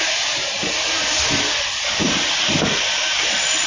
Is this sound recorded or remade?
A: recorded